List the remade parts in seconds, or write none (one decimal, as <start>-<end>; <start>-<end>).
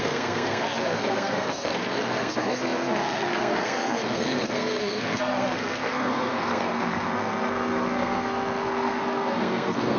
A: 0.0-10.0